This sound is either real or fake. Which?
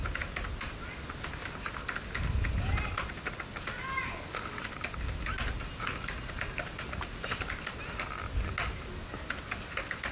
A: real